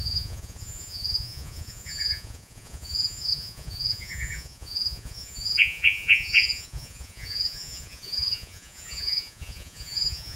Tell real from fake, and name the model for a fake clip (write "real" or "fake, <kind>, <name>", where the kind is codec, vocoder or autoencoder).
fake, vocoder, Vocos